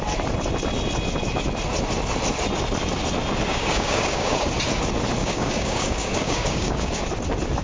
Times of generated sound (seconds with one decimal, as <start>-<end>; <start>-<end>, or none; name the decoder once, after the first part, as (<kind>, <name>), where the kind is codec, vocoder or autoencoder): 3.5-4.4 (codec, DAC); 5.2-7.0